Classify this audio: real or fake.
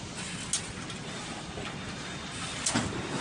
real